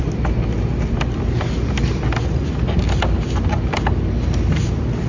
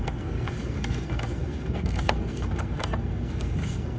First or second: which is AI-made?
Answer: second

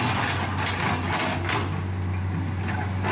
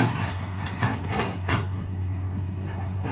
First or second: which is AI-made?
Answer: second